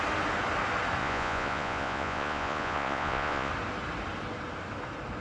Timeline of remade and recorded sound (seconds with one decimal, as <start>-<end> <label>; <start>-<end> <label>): 0.0-1.0 recorded; 1.0-3.5 remade; 3.5-5.2 recorded